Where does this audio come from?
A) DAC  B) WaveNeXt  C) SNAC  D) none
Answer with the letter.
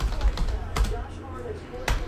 D